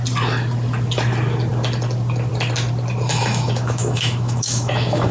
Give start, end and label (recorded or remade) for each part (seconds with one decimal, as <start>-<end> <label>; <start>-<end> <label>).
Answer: 0.0-3.1 recorded; 3.1-5.1 remade